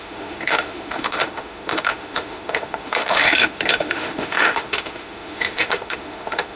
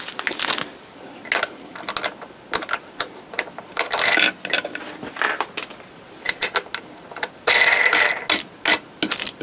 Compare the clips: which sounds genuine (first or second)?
second